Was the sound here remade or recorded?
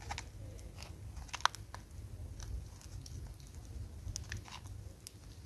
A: recorded